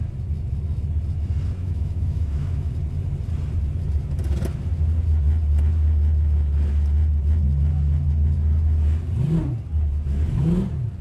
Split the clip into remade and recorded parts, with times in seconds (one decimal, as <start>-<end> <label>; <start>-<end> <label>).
0.0-1.6 recorded; 1.6-2.7 remade; 2.7-11.0 recorded